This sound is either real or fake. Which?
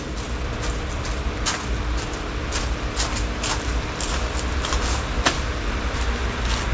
real